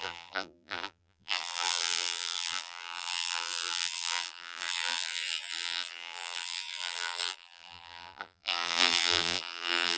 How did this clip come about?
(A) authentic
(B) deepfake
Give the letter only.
B